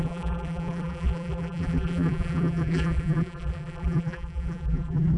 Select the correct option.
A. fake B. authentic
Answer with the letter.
A